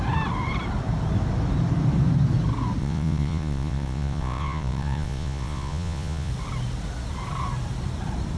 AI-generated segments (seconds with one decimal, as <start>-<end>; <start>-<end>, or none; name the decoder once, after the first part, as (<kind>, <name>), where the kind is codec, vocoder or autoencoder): 2.8-6.3 (vocoder, Vocos)

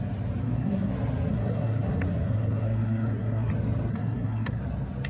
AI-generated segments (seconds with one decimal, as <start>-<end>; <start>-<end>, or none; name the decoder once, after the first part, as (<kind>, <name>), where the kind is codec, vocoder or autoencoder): 0.4-0.9 (codec, SNAC); 1.3-3.5; 3.9-4.6

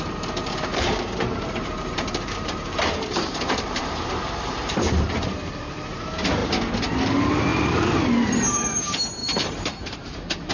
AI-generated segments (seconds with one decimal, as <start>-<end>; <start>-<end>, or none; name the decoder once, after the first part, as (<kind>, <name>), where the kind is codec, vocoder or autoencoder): 0.4-5.5 (vocoder, BigVGAN v2); 7.5-8.0; 9.2-10.5